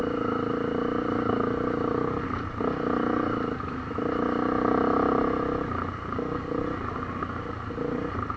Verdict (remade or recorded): recorded